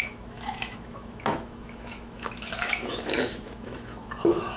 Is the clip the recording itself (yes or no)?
no